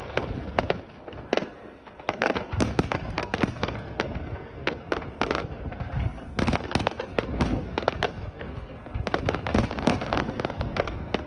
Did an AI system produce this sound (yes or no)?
yes